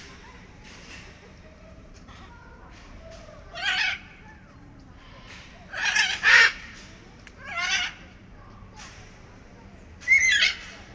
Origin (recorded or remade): remade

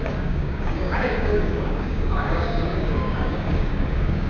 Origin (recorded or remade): remade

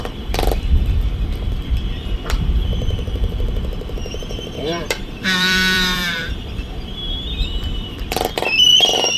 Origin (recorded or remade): remade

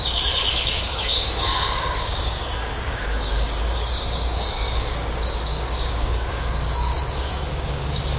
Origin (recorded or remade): remade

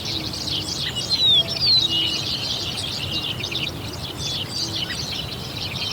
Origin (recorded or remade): recorded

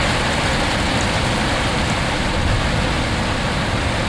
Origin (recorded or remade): recorded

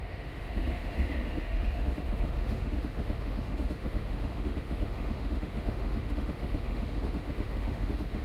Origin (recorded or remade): remade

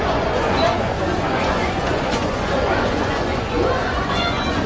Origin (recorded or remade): remade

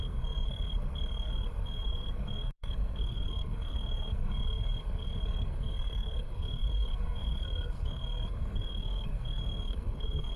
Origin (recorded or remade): remade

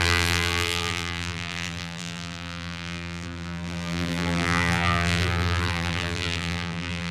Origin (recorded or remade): remade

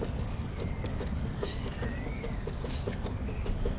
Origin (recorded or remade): remade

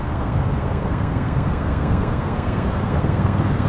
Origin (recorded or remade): remade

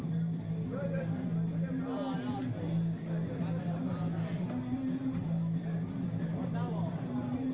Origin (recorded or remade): recorded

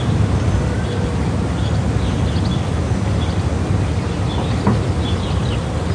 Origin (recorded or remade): recorded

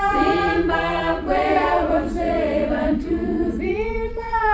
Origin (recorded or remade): remade